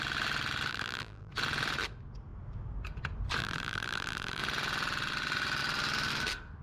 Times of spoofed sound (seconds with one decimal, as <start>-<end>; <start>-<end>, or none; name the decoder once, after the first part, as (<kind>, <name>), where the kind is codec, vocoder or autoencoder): 0.7-1.3 (vocoder, BigVGAN v2); 3.4-4.4